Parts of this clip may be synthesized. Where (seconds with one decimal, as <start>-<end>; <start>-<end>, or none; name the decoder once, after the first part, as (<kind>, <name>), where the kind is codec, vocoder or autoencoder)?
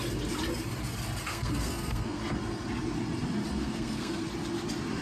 1.3-2.2 (codec, SNAC); 3.5-4.2